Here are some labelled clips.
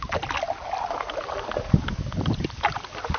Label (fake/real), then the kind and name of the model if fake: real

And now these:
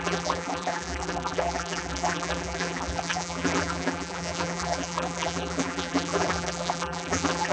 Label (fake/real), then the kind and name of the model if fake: fake, vocoder, BigVGAN v2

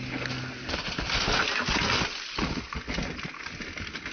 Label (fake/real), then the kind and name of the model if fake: real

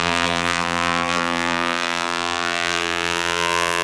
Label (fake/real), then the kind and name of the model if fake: fake, vocoder, BigVGAN v2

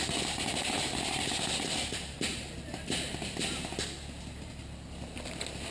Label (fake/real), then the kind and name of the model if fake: real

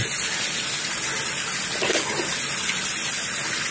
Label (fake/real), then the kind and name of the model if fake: real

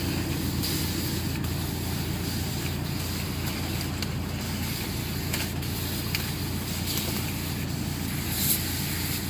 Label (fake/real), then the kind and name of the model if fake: real